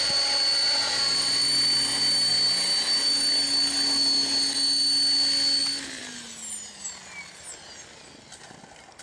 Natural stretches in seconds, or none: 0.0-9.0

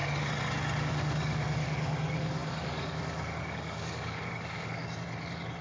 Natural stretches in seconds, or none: 0.0-0.8; 4.8-5.6

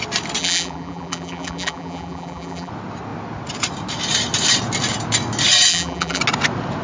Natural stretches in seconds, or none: 0.0-0.4; 2.7-5.7; 6.2-6.8